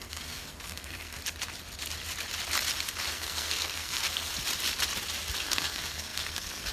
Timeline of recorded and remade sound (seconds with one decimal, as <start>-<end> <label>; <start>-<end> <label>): 0.0-1.2 remade; 1.2-3.0 recorded; 3.0-4.3 remade; 4.3-5.4 recorded; 5.4-6.7 remade